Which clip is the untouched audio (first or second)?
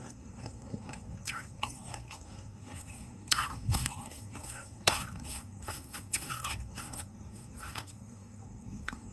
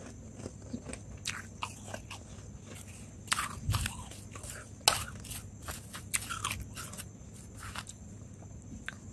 second